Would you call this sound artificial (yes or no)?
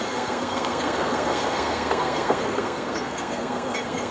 yes